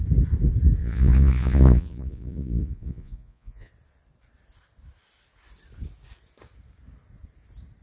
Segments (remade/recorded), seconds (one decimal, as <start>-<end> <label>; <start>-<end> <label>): 0.0-0.8 recorded; 0.8-3.7 remade; 3.7-7.8 recorded